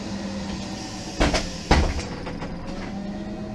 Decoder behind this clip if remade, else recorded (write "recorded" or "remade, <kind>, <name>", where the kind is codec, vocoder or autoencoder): recorded